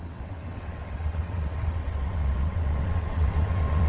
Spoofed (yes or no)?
yes